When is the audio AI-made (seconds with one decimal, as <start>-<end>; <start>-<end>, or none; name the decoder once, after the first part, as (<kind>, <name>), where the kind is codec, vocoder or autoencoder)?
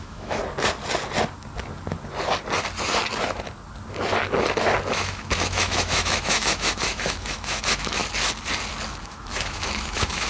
0.0-0.4 (autoencoder, DAC-VAE); 4.9-8.0; 9.0-10.3